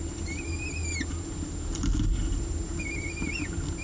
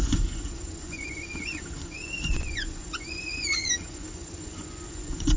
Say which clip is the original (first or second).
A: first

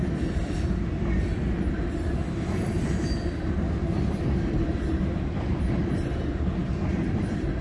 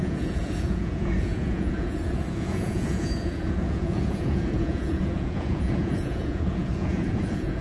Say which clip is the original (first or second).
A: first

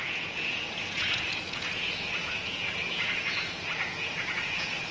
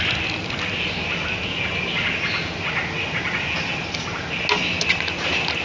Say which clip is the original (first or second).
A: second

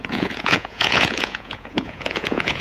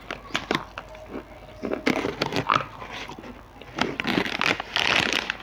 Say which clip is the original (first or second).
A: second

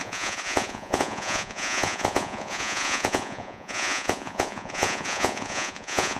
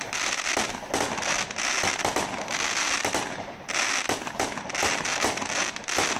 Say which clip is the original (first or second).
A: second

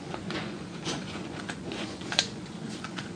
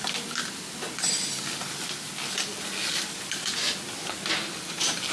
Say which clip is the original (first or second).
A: second